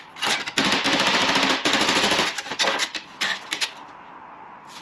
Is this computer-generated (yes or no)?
yes